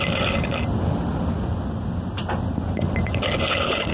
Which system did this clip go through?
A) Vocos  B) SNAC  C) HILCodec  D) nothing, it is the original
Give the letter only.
D